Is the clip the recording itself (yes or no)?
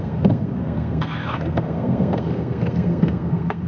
no